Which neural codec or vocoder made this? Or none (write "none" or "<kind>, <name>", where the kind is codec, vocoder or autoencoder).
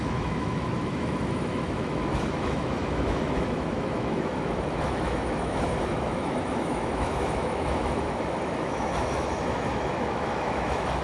autoencoder, DAC-VAE